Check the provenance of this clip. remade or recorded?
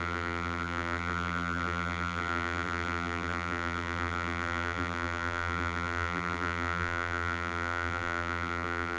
remade